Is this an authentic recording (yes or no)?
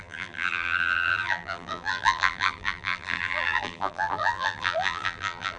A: no